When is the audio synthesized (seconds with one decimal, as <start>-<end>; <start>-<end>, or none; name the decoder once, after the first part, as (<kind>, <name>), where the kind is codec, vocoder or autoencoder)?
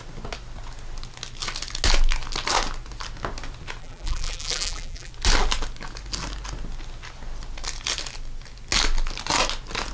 3.8-5.1 (vocoder, BigVGAN v2)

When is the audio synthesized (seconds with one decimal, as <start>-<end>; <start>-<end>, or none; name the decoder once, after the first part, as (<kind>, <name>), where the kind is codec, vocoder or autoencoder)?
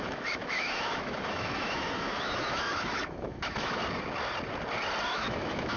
0.0-3.8 (autoencoder, DAC-VAE); 5.1-5.8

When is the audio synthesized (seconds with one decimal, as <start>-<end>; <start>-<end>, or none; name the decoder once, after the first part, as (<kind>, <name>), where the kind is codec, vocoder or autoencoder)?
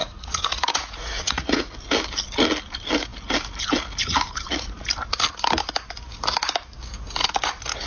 0.0-1.7 (vocoder, Vocos)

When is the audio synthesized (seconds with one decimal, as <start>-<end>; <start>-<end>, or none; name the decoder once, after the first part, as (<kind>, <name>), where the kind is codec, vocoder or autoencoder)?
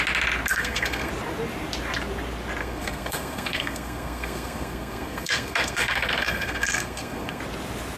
0.5-1.1 (codec, SNAC); 2.6-7.4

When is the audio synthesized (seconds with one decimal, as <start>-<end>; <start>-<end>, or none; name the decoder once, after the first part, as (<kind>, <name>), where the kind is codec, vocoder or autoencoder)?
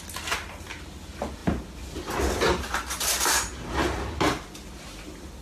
none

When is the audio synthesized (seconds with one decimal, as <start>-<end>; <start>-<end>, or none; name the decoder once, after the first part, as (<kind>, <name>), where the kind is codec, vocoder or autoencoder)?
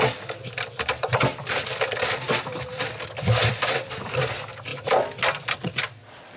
1.1-4.3 (vocoder, BigVGAN v2); 4.7-5.5